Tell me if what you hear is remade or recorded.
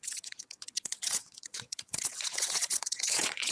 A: remade